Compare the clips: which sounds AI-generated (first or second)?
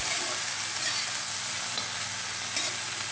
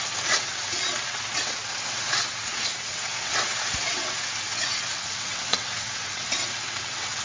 second